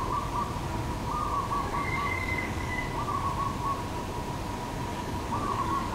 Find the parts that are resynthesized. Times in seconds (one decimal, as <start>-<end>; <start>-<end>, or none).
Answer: 1.7-2.8; 4.9-5.9